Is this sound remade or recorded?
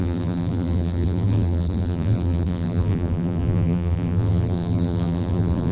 remade